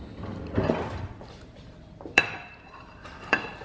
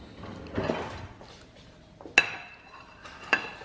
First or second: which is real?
second